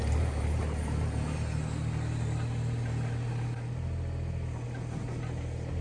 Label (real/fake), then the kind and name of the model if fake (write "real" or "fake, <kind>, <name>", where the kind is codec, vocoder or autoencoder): real